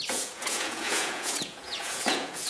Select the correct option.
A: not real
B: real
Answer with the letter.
A